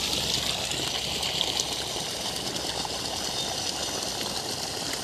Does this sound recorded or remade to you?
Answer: recorded